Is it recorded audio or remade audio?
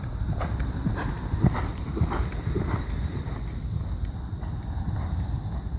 recorded